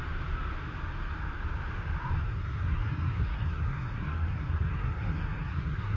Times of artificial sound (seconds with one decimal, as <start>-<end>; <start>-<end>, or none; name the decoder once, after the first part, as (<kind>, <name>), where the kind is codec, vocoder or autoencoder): 2.2-6.0 (codec, SNAC)